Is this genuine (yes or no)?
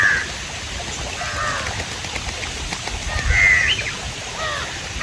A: yes